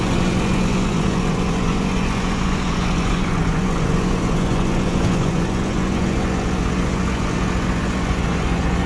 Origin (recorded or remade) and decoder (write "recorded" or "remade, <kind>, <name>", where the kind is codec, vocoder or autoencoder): remade, vocoder, Vocos